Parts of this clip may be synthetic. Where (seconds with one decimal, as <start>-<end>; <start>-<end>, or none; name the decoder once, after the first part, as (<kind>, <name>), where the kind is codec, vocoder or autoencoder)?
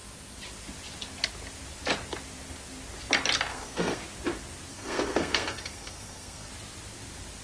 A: 3.5-4.0 (codec, SNAC); 4.7-6.5